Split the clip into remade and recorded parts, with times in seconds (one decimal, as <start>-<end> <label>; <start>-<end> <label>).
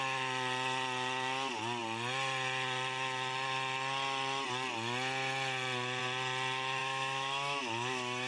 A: 0.0-6.8 recorded; 6.8-8.3 remade